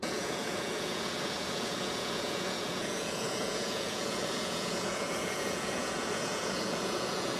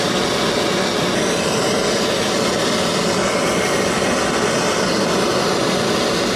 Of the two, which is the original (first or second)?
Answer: second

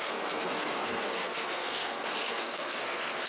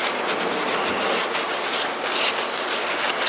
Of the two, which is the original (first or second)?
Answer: second